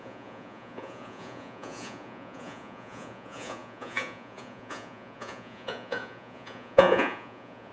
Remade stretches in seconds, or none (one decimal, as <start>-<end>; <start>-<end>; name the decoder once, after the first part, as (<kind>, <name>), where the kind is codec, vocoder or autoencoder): 0.0-7.7 (vocoder, Vocos)

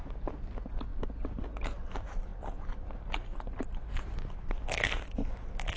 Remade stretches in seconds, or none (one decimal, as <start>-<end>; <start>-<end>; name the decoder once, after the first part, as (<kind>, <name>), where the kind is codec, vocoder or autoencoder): none